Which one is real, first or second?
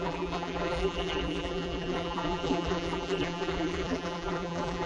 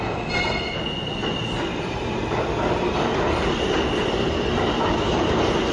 second